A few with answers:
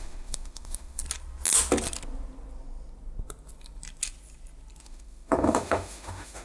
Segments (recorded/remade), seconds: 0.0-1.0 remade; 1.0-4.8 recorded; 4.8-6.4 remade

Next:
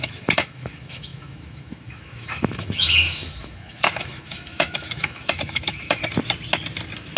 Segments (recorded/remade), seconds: 0.0-6.0 remade; 6.0-7.2 recorded

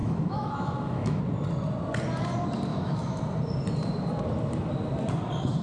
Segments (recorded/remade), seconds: 0.0-1.2 remade; 1.2-2.7 recorded; 2.7-3.2 remade; 3.2-5.6 recorded

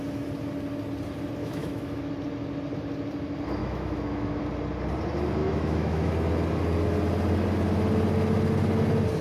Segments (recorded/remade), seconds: 0.0-1.4 recorded; 1.4-2.1 remade; 2.1-3.6 recorded; 3.6-4.4 remade; 4.4-5.4 recorded; 5.4-6.1 remade; 6.1-9.2 recorded

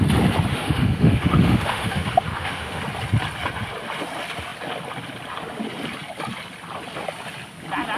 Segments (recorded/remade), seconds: 0.0-0.5 recorded; 0.5-2.8 remade; 2.8-8.0 recorded

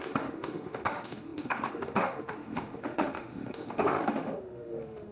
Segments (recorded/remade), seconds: 0.0-5.1 remade

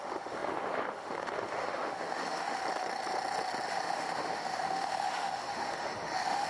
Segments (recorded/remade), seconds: 0.0-2.6 remade; 2.6-3.7 recorded; 3.7-6.5 remade

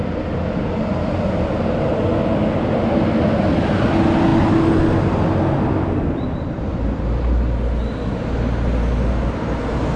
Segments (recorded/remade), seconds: 0.0-10.0 recorded